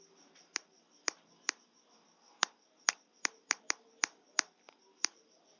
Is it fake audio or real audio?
real